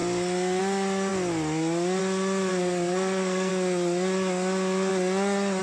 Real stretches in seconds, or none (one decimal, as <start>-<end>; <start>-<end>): 0.0-2.5; 3.5-5.6

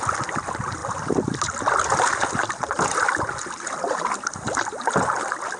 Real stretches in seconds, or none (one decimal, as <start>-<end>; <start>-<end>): 0.0-5.6

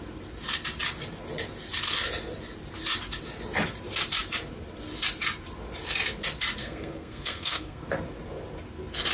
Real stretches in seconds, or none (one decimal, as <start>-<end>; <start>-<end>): 0.0-6.6; 7.8-9.1

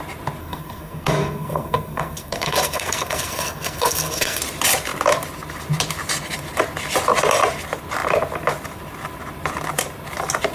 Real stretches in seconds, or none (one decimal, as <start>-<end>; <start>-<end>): 0.0-0.4; 4.4-10.5

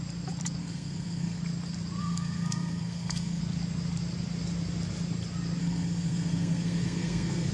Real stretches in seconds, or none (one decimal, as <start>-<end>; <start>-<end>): 0.0-0.6; 1.4-2.0; 3.4-5.6

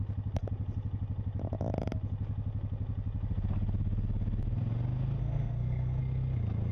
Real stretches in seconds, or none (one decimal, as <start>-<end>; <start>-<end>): 0.0-5.2; 6.0-6.7

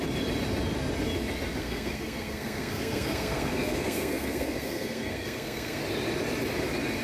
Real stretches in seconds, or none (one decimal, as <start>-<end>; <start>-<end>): 0.0-1.6; 5.8-7.0

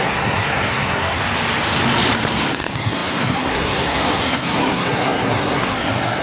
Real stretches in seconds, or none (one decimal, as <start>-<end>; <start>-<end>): 1.2-2.5